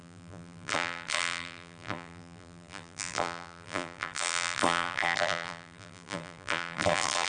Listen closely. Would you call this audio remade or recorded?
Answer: remade